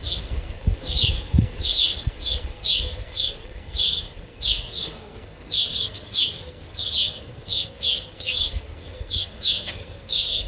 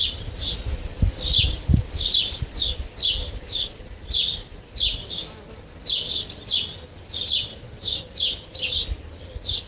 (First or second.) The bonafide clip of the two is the second